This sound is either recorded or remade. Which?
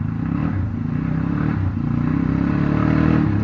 recorded